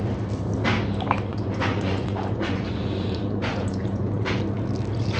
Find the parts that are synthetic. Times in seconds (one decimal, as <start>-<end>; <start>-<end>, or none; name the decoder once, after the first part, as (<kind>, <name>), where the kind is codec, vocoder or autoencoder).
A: 1.3-4.4 (vocoder, Vocos)